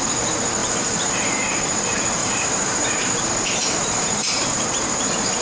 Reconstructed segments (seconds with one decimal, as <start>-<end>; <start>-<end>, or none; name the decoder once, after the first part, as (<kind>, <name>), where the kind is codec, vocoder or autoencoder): 0.6-1.1 (vocoder, BigVGAN v2); 2.2-3.2; 3.6-4.7

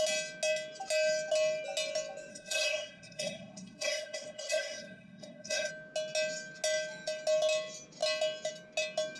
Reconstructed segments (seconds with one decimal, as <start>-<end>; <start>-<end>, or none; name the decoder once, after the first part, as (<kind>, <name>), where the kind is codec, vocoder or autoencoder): 2.3-5.7 (codec, SNAC)

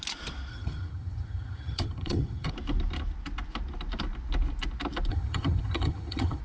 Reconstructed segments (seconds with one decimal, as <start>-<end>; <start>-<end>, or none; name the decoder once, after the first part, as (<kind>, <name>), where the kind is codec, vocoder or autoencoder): 0.5-2.5 (vocoder, HiFi-GAN); 5.1-6.4

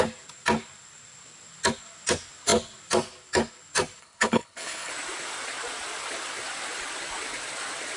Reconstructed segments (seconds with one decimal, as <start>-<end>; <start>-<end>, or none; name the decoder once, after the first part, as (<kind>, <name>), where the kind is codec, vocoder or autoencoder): 4.0-4.9 (codec, HILCodec)